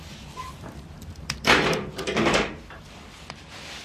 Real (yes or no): no